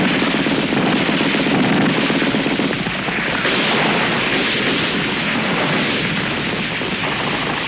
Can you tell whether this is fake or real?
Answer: real